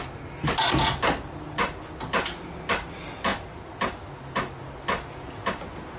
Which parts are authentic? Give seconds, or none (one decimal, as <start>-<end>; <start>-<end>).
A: 0.0-6.0